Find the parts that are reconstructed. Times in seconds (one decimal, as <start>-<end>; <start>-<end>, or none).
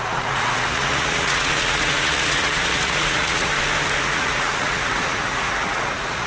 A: 0.0-3.5; 4.0-6.3